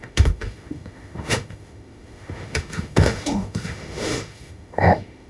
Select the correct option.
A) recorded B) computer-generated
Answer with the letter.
B